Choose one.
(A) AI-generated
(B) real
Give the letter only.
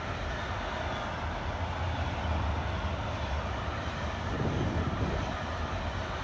B